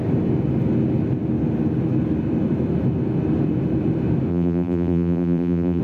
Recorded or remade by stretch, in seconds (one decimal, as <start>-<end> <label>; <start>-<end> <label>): 0.0-4.3 recorded; 4.3-5.8 remade